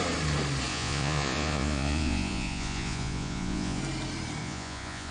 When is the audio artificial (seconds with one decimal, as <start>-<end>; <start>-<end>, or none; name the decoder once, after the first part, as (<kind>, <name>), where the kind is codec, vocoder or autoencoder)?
0.7-3.8 (vocoder, Vocos); 4.4-5.1